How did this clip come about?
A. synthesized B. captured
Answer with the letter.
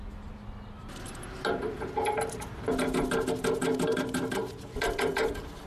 B